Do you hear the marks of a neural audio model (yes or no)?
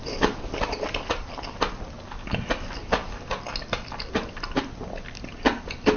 no